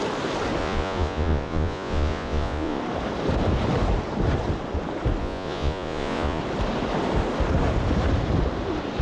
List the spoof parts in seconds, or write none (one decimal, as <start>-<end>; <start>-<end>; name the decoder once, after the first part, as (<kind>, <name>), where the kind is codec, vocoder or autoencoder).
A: 0.6-2.8 (vocoder, Vocos); 5.2-6.4